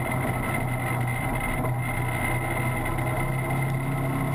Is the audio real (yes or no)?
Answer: yes